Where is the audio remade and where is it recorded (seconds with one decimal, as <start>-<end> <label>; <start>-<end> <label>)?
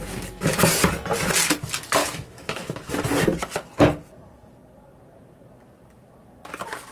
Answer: 0.0-2.0 recorded; 2.0-2.9 remade; 2.9-6.9 recorded